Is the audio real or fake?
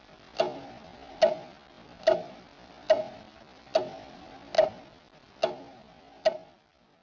real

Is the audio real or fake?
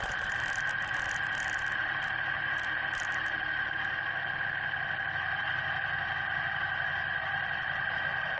real